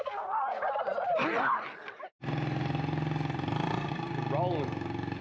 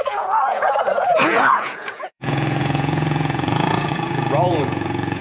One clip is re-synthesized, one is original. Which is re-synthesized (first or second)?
second